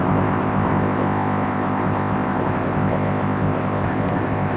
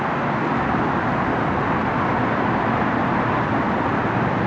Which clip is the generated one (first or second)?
first